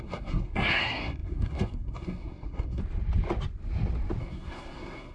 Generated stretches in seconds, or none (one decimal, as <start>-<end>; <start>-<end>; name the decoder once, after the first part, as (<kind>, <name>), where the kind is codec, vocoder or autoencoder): 0.0-2.8 (codec, SNAC); 4.2-5.1